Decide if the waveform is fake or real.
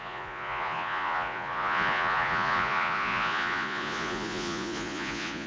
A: fake